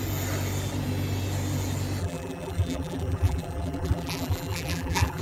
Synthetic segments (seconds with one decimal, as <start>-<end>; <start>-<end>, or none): 2.0-5.2